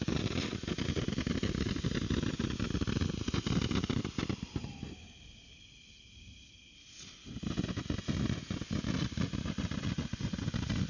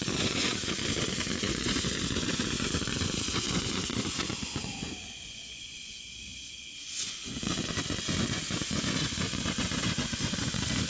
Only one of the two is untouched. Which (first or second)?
first